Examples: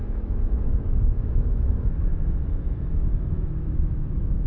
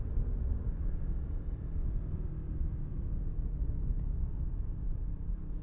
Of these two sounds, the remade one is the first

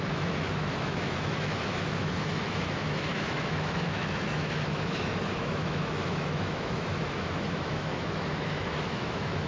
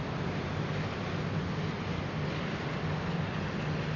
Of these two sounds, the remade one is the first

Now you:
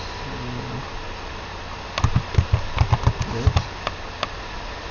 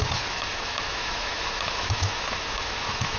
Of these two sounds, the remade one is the second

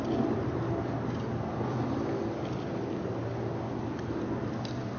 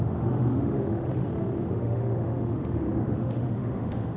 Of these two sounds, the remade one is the second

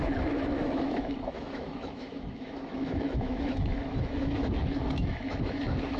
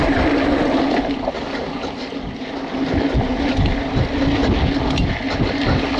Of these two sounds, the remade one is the first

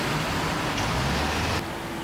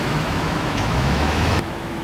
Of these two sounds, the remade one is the second